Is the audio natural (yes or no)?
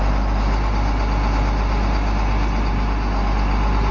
yes